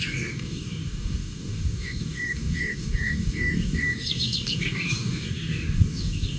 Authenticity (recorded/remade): remade